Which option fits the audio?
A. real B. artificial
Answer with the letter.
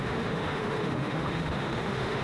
B